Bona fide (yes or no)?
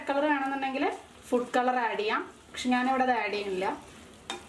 yes